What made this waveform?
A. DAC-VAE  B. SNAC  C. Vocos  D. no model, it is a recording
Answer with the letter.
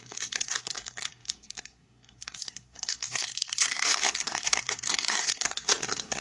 B